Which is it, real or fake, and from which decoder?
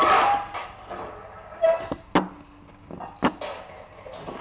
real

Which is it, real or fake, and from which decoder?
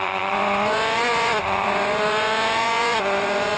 fake, vocoder, Vocos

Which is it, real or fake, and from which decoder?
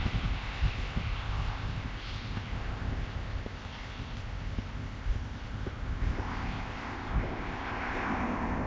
fake, codec, ZipCodec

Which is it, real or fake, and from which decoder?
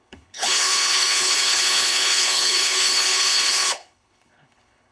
fake, codec, HILCodec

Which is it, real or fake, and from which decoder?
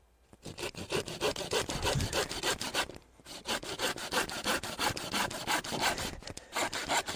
real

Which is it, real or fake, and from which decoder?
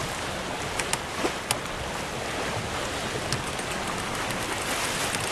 real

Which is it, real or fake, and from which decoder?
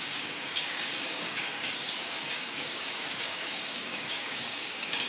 fake, codec, DAC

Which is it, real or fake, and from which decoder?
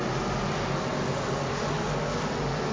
real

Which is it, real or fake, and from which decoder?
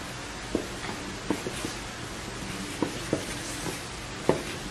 real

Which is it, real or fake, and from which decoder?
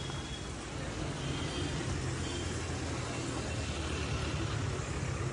real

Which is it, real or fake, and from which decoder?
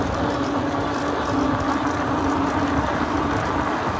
real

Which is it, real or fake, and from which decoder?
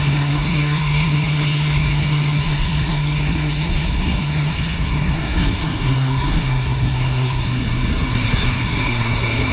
fake, codec, SNAC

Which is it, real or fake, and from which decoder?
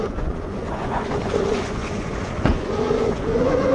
fake, vocoder, Vocos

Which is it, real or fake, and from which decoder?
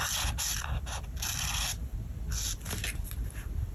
real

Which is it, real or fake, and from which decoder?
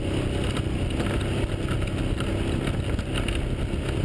real